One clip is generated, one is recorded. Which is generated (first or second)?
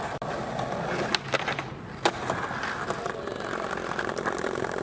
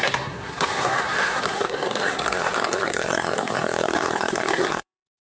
second